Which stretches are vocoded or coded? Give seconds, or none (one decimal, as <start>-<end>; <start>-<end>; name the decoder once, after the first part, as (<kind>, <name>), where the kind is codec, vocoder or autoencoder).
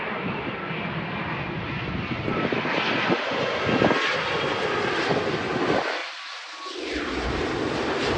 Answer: 2.3-3.9 (vocoder, BigVGAN v2); 6.0-8.2